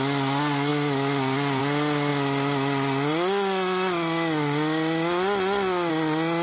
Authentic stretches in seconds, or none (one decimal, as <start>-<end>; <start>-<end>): 0.0-6.4